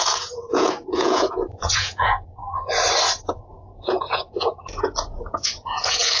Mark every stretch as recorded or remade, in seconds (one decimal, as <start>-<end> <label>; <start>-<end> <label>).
0.0-2.4 remade; 2.4-3.3 recorded; 3.3-6.2 remade